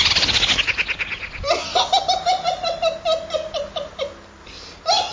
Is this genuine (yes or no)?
yes